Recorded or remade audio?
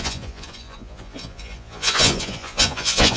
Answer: remade